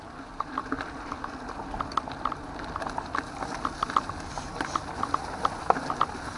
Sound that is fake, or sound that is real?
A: real